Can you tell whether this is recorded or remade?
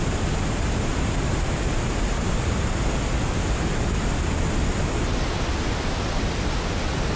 recorded